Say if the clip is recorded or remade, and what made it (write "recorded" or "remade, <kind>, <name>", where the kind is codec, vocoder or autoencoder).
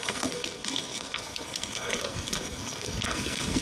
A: remade, codec, SNAC